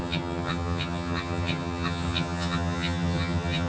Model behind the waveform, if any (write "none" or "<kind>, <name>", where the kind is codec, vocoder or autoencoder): vocoder, HiFi-GAN